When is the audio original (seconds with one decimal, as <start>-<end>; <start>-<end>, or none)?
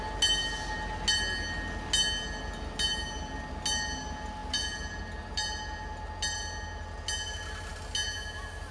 0.0-8.7